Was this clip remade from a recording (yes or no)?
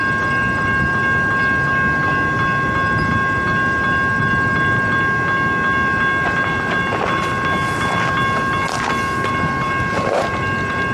no